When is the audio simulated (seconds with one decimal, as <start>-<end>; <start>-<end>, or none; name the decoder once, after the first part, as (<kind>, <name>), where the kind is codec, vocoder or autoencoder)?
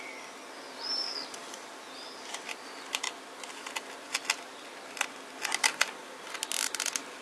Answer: none